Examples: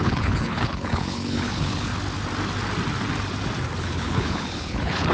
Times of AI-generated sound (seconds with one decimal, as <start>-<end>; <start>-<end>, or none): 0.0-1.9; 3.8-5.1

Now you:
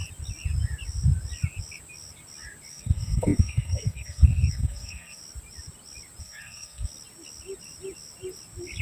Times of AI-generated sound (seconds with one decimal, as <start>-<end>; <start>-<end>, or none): 2.7-5.2; 6.2-6.9

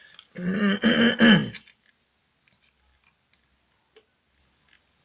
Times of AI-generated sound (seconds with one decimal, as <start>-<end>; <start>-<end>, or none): none